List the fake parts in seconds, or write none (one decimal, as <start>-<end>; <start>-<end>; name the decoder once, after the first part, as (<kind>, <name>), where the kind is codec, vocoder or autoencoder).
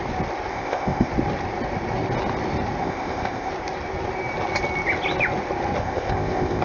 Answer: 0.5-1.1 (codec, ZipCodec); 2.8-3.5; 5.8-6.6